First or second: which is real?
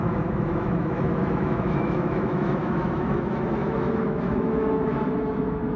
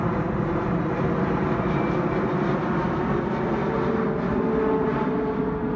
second